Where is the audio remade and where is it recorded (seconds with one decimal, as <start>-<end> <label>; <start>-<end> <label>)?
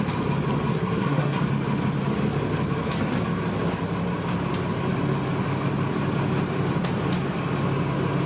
0.0-0.7 recorded; 0.7-1.4 remade; 1.4-8.3 recorded